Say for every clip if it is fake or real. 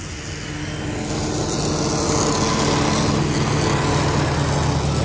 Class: real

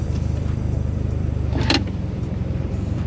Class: fake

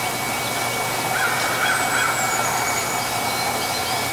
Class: real